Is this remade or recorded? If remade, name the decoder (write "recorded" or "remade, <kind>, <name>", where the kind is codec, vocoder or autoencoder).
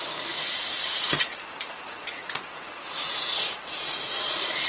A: remade, vocoder, Vocos